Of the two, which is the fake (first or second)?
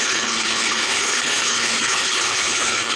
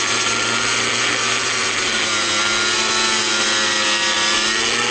first